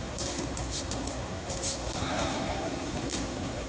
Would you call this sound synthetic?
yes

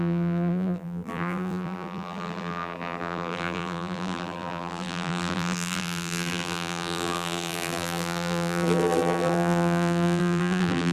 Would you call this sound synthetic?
yes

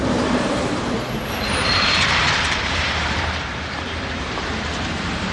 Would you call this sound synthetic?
yes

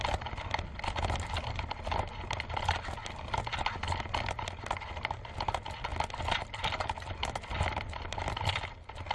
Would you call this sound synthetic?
no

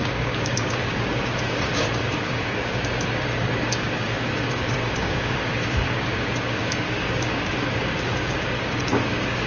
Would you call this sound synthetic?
yes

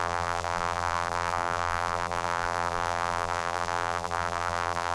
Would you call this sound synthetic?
yes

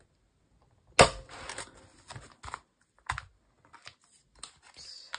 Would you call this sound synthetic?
no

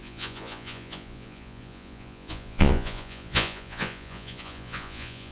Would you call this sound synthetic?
yes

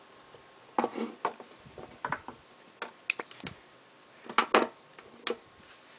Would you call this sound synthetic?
no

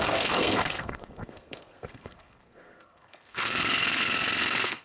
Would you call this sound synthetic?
yes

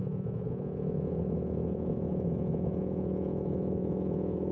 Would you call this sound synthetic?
yes